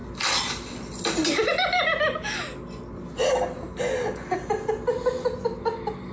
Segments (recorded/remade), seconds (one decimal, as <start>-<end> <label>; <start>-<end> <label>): 0.0-6.1 recorded